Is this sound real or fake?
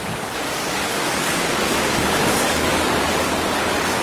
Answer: fake